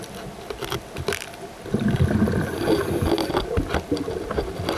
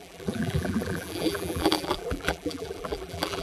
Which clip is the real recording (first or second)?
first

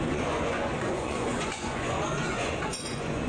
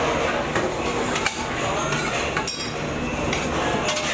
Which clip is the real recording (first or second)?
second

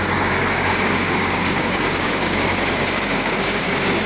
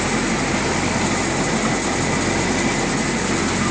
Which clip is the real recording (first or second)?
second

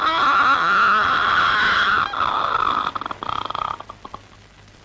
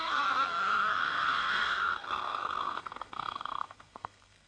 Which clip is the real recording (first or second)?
first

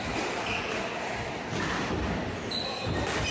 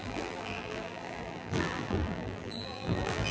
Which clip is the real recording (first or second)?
first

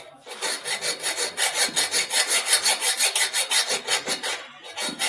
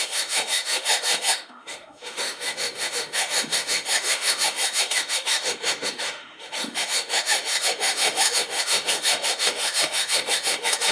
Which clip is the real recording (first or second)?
first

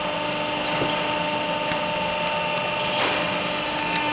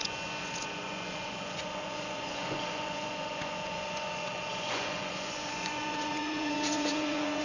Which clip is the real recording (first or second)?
first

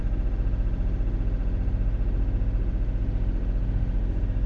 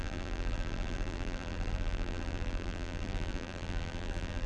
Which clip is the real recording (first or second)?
first